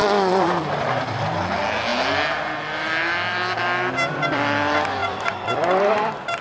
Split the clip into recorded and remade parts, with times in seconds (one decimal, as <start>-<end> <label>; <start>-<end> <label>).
0.0-1.2 remade; 1.2-5.0 recorded; 5.0-5.8 remade; 5.8-6.4 recorded